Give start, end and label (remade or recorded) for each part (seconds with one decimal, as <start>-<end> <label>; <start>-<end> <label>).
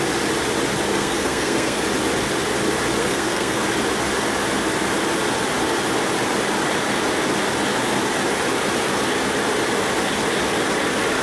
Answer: 0.0-0.9 recorded; 0.9-1.8 remade; 1.8-3.0 recorded; 3.0-3.6 remade; 3.6-11.2 recorded